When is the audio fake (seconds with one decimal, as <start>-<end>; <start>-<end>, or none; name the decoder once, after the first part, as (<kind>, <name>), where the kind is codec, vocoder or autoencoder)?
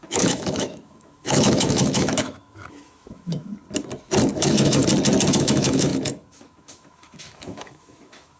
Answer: 0.0-3.5 (autoencoder, DAC-VAE); 4.3-4.8; 5.3-8.4